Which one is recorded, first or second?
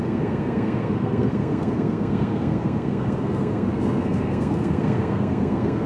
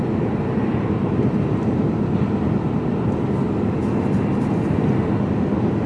second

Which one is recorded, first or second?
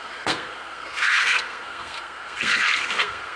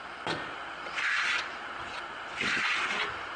second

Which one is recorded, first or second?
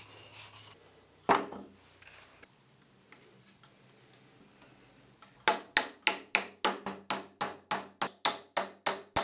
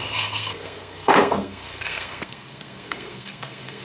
first